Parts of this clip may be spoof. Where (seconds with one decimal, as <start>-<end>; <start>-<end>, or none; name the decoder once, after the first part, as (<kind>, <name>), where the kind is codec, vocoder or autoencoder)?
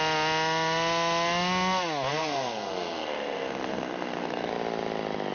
2.1-4.5 (codec, SNAC)